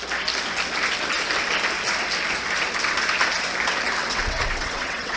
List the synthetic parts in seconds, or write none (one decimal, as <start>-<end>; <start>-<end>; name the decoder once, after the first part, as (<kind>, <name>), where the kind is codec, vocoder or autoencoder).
4.0-5.2 (vocoder, WaveNeXt)